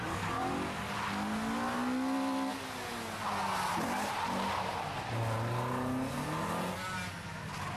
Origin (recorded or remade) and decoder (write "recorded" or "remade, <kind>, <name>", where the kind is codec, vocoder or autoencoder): recorded